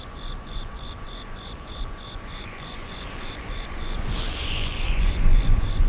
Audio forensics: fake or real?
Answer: fake